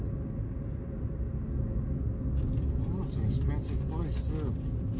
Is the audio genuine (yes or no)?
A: yes